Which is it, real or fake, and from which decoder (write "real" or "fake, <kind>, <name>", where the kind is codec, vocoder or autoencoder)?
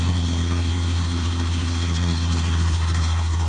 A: fake, codec, SNAC